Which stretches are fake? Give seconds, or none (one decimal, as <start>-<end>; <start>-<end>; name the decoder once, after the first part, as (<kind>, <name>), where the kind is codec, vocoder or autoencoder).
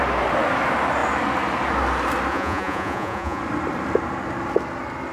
2.3-3.4 (vocoder, Vocos)